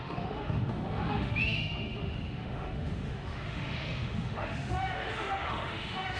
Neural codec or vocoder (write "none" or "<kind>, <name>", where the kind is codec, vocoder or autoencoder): autoencoder, DAC-VAE